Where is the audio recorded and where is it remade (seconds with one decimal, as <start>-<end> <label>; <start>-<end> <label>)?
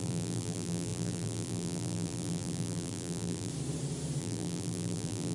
0.0-3.5 remade; 3.5-4.2 recorded; 4.2-5.3 remade